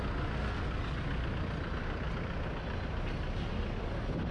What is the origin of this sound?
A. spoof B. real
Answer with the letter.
B